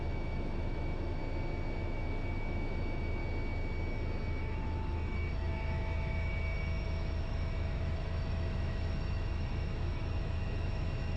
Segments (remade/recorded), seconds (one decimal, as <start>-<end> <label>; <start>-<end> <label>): 0.0-1.2 remade; 1.2-1.8 recorded; 1.8-3.2 remade; 3.2-4.4 recorded; 4.4-11.2 remade

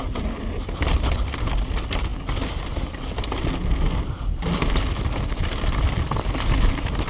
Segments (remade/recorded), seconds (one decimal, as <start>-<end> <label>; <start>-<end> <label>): 0.0-7.1 recorded

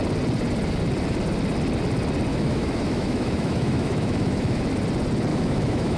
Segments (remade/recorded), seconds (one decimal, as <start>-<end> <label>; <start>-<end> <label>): 0.0-2.3 recorded; 2.3-4.6 remade; 4.6-5.3 recorded; 5.3-6.0 remade

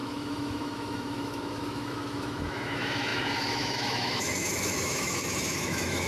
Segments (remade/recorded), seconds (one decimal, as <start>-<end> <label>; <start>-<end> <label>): 0.0-6.1 remade

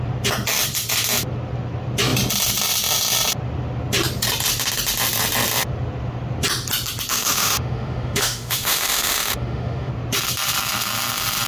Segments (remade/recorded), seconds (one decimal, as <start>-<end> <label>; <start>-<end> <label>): 0.0-7.1 recorded; 7.1-9.9 remade; 9.9-11.5 recorded